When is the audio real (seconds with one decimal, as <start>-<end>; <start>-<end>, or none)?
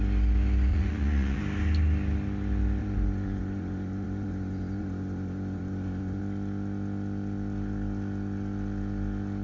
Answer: 0.0-0.7; 1.4-2.8; 6.2-9.4